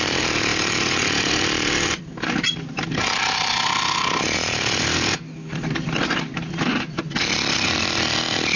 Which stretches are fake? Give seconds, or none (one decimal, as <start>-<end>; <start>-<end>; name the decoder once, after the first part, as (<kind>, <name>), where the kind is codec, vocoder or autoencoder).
none